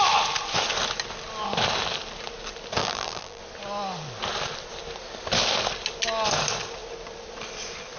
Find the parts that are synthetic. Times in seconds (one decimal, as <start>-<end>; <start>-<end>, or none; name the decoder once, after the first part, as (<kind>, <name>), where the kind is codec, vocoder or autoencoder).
2.8-3.4 (vocoder, BigVGAN v2)